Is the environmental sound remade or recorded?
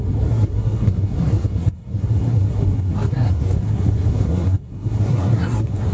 remade